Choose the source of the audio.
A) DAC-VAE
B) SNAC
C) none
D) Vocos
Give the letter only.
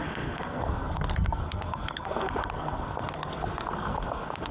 B